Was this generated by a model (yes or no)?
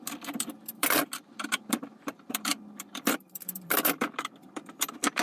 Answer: yes